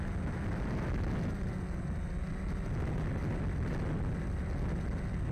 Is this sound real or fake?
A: real